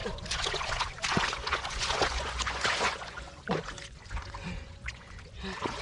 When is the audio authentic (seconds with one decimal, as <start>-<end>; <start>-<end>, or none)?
none